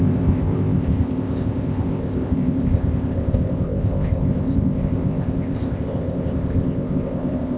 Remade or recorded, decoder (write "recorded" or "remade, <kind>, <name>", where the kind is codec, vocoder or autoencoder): remade, codec, ZipCodec